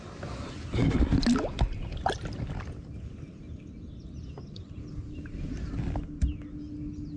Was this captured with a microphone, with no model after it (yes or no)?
yes